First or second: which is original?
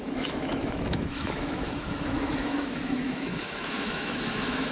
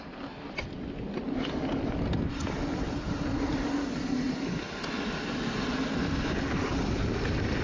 second